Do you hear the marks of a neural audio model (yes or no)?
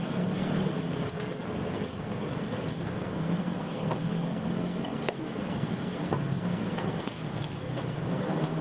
yes